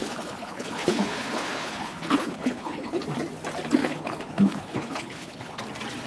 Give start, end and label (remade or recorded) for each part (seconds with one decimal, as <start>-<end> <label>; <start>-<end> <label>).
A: 0.0-3.0 remade; 3.0-3.8 recorded; 3.8-5.6 remade; 5.6-6.1 recorded